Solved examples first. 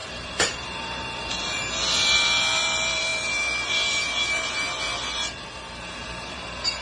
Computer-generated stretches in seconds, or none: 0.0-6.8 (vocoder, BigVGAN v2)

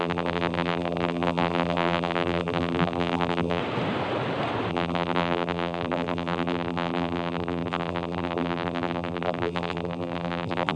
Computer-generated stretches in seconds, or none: 0.0-3.6 (vocoder, BigVGAN v2); 4.7-10.8

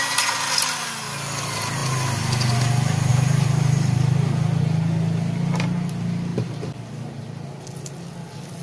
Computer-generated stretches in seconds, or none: 3.1-4.6 (vocoder, BigVGAN v2); 6.3-7.2

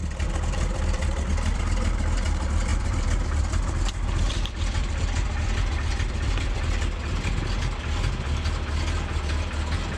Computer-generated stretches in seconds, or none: 0.0-1.6 (vocoder, BigVGAN v2); 2.7-7.3